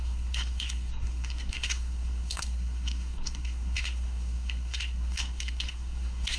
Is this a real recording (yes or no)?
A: no